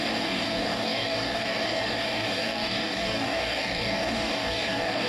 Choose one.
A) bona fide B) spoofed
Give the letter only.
B